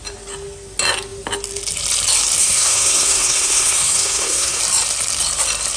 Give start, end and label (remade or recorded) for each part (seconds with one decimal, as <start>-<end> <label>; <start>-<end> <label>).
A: 0.0-2.4 recorded; 2.4-4.6 remade; 4.6-5.8 recorded